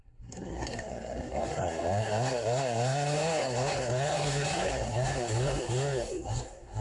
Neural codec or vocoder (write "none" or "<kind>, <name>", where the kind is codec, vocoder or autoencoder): codec, SNAC